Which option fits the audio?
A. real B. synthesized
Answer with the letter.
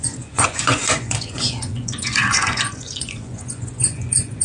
B